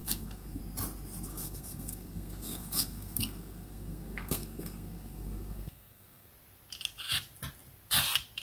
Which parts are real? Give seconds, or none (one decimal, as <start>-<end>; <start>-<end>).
0.6-1.3; 6.3-8.4